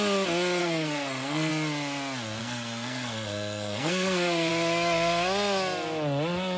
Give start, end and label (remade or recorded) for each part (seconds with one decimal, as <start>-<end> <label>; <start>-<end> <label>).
0.0-0.6 recorded; 0.6-1.5 remade; 1.5-2.4 recorded; 2.4-4.5 remade; 4.5-6.6 recorded